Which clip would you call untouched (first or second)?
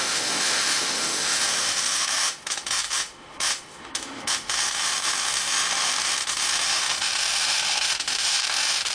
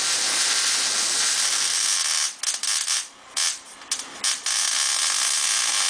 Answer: second